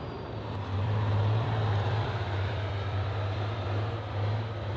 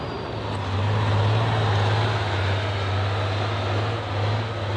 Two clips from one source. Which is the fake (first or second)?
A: first